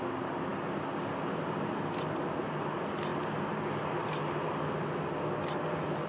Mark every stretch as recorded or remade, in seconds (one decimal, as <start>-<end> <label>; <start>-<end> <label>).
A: 0.0-6.1 recorded